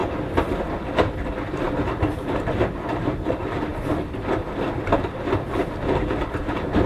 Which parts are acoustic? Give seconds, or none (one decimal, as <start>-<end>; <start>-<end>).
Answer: 3.7-5.5